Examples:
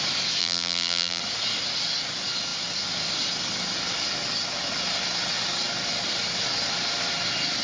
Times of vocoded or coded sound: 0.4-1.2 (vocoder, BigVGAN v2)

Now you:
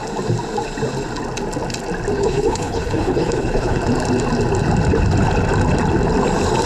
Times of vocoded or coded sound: 2.2-3.8 (codec, HILCodec)

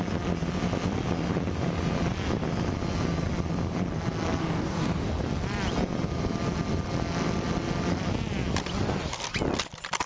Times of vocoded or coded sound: 4.4-5.1 (codec, DAC)

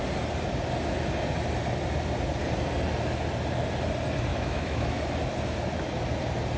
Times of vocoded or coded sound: 4.3-5.0 (autoencoder, DAC-VAE)